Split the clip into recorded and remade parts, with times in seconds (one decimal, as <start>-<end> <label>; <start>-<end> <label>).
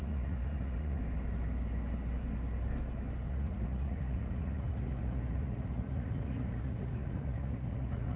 0.0-1.0 remade; 1.0-3.3 recorded; 3.3-8.2 remade